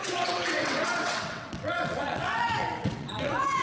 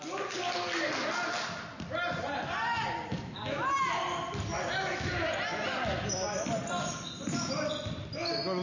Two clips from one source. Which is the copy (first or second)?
first